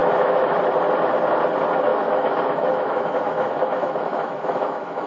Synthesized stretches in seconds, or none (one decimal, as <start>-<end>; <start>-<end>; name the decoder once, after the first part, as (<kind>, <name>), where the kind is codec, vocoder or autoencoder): 0.0-0.6 (autoencoder, DAC-VAE); 1.9-5.1